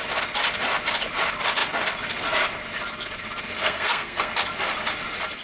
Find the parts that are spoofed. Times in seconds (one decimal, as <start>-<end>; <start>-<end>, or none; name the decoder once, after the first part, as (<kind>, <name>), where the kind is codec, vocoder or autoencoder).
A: 3.6-4.3 (codec, SNAC)